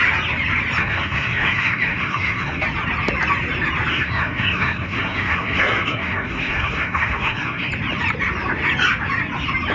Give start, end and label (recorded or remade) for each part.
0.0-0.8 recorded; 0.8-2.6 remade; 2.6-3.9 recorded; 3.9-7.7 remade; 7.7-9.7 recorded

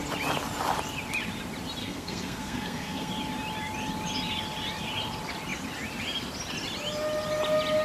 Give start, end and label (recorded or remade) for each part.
0.0-1.8 recorded; 1.8-3.1 remade; 3.1-7.8 recorded

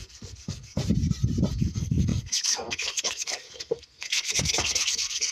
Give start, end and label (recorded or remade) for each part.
0.0-0.8 remade; 0.8-1.5 recorded; 1.5-5.3 remade

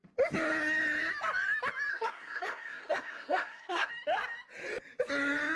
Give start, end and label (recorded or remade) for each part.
0.0-1.9 recorded; 1.9-3.9 remade; 3.9-5.6 recorded

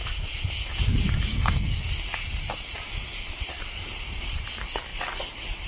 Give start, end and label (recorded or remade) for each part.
0.0-1.3 recorded; 1.3-1.8 remade; 1.8-5.7 recorded

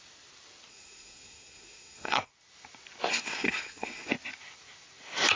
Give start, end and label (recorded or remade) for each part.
0.0-0.7 recorded; 0.7-2.3 remade; 2.3-3.1 recorded; 3.1-4.1 remade; 4.1-5.4 recorded